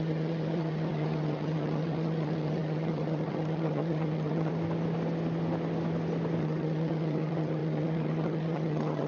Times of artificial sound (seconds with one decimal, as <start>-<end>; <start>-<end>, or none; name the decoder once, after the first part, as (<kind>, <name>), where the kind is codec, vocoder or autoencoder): 0.0-4.5 (vocoder, HiFi-GAN); 6.4-9.1

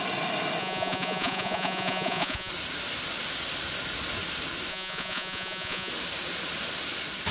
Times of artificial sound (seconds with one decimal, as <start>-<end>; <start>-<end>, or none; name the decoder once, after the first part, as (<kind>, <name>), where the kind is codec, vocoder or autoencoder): 0.6-2.5 (vocoder, Vocos); 4.7-5.9

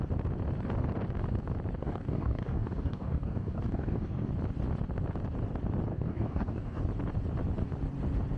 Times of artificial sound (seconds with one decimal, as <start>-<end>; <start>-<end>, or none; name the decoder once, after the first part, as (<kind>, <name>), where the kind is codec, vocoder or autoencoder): 1.8-4.3 (codec, DAC); 5.9-6.8